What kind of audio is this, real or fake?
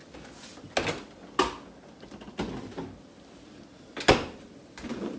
real